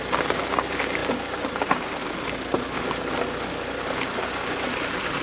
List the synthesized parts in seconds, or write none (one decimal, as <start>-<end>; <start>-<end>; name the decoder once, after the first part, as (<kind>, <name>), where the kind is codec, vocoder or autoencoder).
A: none